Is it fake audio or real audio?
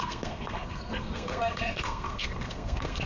fake